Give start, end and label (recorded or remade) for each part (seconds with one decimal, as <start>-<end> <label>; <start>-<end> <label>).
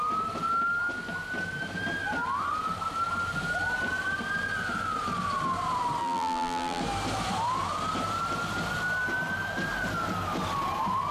0.0-6.0 recorded; 6.0-6.8 remade; 6.8-11.1 recorded